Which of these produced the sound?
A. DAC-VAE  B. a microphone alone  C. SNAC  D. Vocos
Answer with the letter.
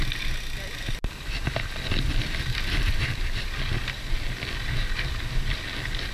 B